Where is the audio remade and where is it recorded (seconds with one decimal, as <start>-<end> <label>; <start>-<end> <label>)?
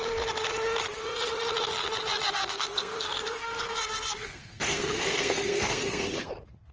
0.0-2.4 recorded; 2.4-6.3 remade; 6.3-6.7 recorded